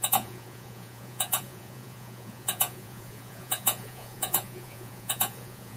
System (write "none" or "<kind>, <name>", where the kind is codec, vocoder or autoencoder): vocoder, Vocos